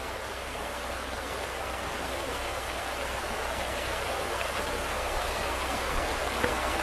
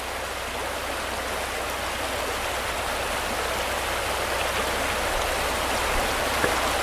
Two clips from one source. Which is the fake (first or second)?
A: first